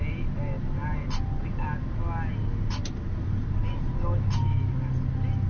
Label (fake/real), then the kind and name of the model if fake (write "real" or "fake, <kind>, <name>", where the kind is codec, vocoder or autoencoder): real